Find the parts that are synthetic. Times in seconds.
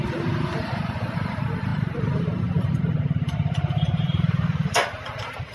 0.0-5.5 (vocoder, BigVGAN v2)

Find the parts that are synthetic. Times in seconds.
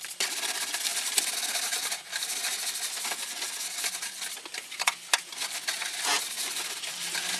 none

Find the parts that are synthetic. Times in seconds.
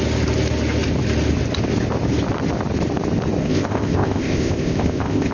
3.4-5.3 (codec, ZipCodec)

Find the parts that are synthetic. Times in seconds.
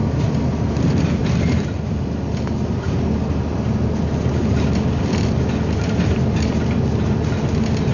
none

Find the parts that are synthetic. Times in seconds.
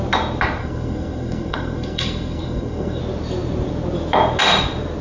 0.6-3.0 (codec, SNAC)